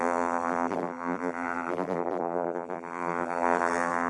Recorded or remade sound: remade